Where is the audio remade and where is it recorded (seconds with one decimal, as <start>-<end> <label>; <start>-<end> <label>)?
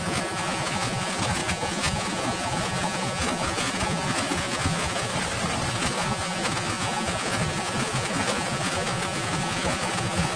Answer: 0.0-5.1 remade; 5.1-5.7 recorded; 5.7-10.4 remade